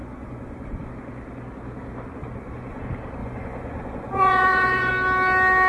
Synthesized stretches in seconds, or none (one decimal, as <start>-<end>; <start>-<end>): 0.0-0.9; 2.2-2.8; 3.2-4.9